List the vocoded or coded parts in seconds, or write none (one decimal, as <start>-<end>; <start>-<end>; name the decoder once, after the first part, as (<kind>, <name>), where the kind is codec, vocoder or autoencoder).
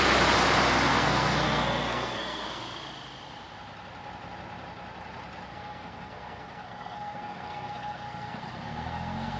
0.9-2.6 (codec, SNAC); 5.5-9.4